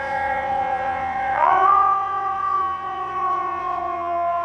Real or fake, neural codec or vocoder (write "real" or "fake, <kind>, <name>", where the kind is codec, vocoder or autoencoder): fake, vocoder, WaveNeXt